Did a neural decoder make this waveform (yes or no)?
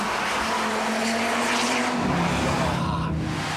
no